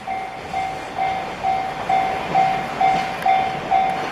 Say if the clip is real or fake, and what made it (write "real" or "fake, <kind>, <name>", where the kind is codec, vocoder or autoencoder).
real